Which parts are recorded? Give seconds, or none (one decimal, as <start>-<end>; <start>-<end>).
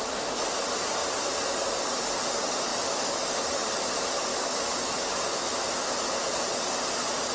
0.0-2.7; 3.3-4.3; 5.9-7.3